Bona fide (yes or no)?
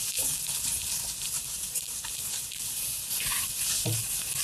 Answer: yes